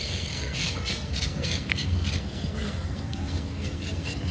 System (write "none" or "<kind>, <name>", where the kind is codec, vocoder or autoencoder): codec, SNAC